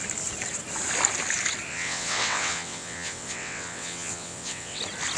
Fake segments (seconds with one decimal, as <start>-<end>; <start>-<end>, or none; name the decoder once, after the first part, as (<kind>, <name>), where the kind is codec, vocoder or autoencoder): 1.7-4.8 (vocoder, WaveNeXt)